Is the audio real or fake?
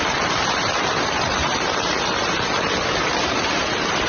fake